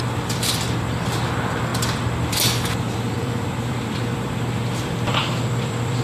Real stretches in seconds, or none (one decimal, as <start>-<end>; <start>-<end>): 1.7-2.2